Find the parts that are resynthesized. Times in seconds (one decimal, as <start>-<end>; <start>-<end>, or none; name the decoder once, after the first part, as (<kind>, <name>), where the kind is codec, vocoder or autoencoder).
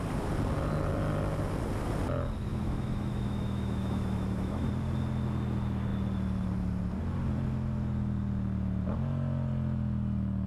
2.5-4.7 (autoencoder, DAC-VAE)